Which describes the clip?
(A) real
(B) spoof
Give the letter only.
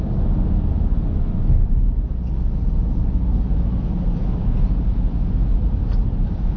A